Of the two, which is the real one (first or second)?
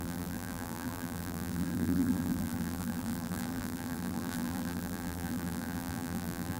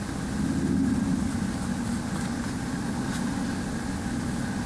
second